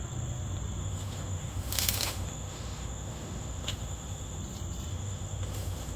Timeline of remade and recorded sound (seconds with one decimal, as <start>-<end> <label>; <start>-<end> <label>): 0.0-0.8 recorded; 0.8-4.4 remade; 4.4-4.9 recorded; 4.9-6.0 remade